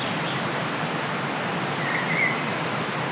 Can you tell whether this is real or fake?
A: real